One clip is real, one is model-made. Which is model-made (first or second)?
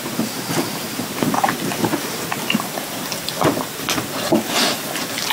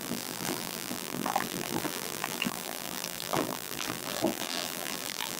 second